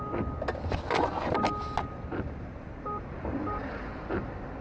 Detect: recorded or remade recorded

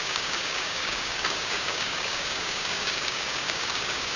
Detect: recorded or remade remade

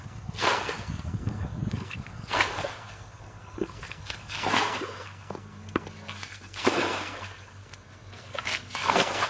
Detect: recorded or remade remade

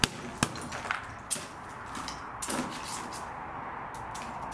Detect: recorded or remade recorded